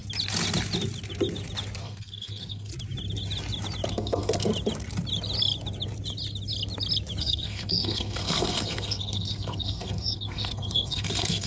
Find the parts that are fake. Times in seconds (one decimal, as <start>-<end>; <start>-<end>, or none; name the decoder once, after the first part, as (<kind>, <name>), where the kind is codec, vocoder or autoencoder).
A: 1.8-2.7 (codec, SNAC); 3.9-4.5; 7.2-11.5